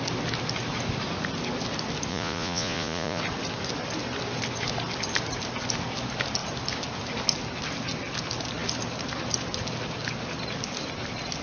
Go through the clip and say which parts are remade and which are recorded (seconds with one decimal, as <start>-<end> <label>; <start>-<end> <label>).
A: 0.0-2.1 recorded; 2.1-3.2 remade; 3.2-11.4 recorded